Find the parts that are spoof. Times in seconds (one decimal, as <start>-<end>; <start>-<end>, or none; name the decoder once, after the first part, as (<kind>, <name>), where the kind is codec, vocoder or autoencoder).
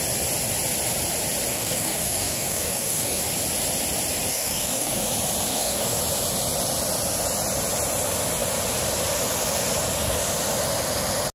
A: 1.5-3.2 (codec, DAC); 4.3-5.1; 5.5-6.0